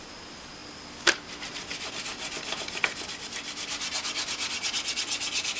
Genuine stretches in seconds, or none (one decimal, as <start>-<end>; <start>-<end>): 0.0-5.6